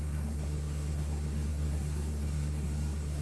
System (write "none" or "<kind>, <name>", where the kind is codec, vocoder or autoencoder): codec, SNAC